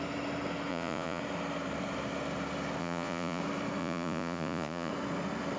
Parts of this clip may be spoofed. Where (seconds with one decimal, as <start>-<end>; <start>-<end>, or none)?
0.7-1.2; 2.8-3.4; 3.8-4.9